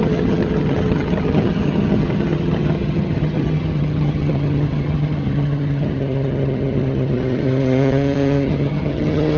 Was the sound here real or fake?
fake